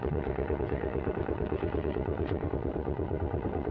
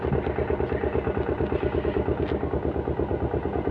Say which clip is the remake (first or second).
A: first